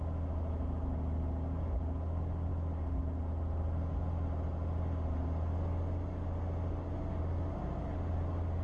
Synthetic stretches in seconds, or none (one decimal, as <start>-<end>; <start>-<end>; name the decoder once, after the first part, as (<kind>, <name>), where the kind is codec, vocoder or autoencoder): none

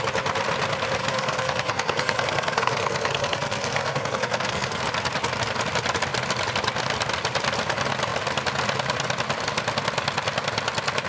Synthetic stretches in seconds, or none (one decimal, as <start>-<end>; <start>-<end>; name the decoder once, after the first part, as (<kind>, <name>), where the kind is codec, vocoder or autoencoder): 1.0-4.8 (codec, SNAC)